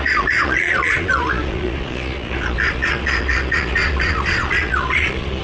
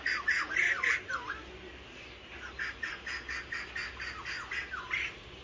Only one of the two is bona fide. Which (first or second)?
second